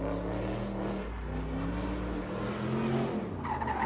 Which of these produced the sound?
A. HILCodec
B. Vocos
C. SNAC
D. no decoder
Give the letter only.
D